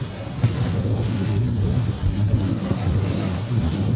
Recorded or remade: remade